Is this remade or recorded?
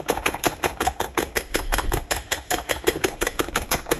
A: remade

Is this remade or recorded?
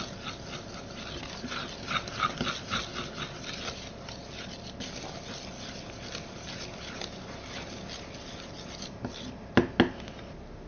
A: recorded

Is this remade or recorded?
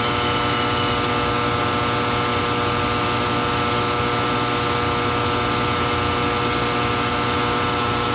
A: recorded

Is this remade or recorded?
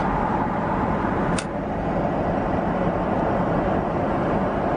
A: recorded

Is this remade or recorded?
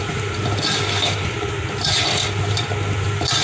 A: recorded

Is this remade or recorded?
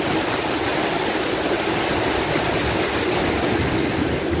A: recorded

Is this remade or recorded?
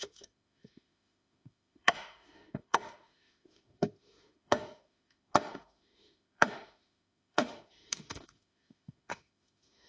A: remade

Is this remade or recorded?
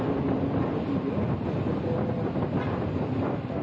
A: recorded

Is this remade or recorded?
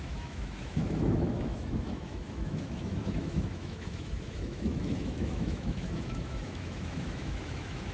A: remade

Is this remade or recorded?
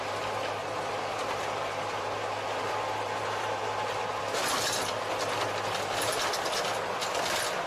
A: recorded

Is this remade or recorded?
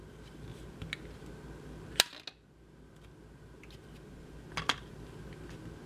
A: recorded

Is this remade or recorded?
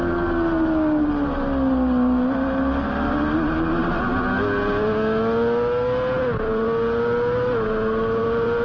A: recorded